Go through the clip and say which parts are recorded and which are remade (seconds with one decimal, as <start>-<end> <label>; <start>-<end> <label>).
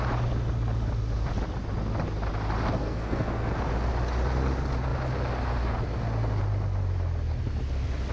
0.0-2.7 recorded; 2.7-3.5 remade; 3.5-8.1 recorded